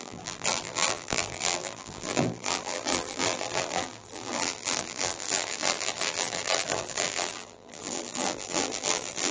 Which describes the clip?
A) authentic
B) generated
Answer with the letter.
B